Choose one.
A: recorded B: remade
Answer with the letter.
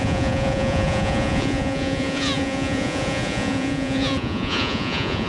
B